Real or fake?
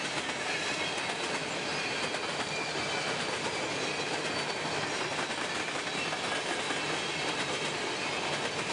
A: real